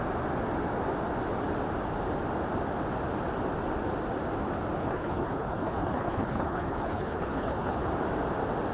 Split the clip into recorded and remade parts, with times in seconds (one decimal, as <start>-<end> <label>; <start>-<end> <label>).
0.0-4.8 recorded; 4.8-7.9 remade; 7.9-8.7 recorded